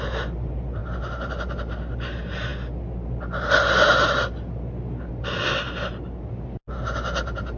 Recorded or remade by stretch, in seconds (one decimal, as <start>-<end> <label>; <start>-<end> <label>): 0.0-7.6 recorded

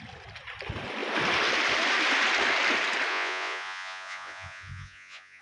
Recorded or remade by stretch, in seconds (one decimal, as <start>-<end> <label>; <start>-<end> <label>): 0.0-3.1 recorded; 3.1-5.4 remade

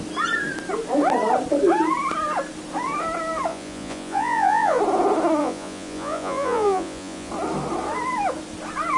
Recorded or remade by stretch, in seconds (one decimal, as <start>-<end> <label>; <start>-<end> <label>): 0.0-3.5 recorded; 3.5-4.8 remade; 4.8-5.4 recorded; 5.4-7.3 remade; 7.3-9.0 recorded

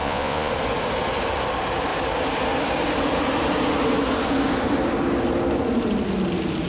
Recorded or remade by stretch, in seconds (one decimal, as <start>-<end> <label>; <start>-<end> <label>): 0.0-0.5 remade; 0.5-6.7 recorded

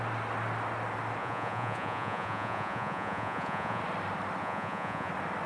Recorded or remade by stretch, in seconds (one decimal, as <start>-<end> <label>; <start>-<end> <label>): 0.0-1.2 recorded; 1.2-3.8 remade; 3.8-4.4 recorded; 4.4-5.1 remade; 5.1-5.5 recorded

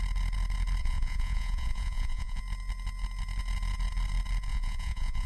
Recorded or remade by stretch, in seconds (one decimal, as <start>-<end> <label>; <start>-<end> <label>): 0.0-0.8 recorded; 0.8-2.4 remade; 2.4-4.5 recorded; 4.5-5.3 remade

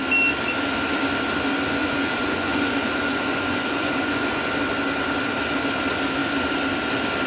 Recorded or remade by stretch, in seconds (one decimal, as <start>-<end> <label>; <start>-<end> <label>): 0.0-1.8 recorded; 1.8-4.5 remade; 4.5-7.3 recorded